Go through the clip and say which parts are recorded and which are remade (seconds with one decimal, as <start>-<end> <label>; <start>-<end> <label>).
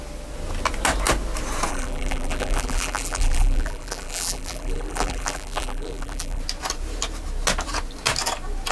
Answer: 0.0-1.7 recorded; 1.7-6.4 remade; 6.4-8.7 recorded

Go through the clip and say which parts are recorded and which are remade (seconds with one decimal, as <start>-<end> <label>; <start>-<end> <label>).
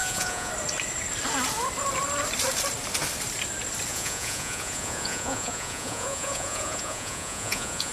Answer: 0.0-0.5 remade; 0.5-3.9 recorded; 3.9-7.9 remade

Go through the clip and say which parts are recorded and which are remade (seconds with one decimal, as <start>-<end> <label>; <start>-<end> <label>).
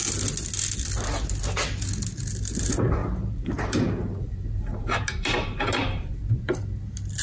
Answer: 0.0-3.0 recorded; 3.0-6.3 remade; 6.3-7.2 recorded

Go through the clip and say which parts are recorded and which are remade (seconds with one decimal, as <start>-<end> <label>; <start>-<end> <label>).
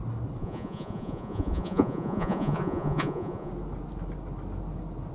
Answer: 0.0-0.4 recorded; 0.4-3.5 remade; 3.5-5.1 recorded